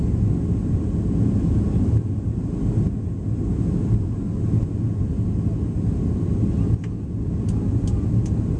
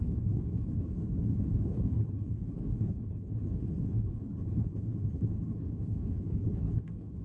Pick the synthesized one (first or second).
second